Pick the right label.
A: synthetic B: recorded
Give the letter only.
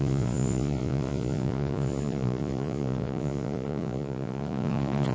A